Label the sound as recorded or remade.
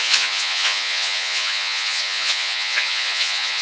remade